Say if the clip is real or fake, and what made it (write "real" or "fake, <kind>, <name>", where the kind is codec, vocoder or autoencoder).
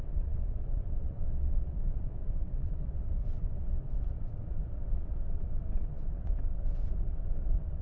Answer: fake, vocoder, WaveNeXt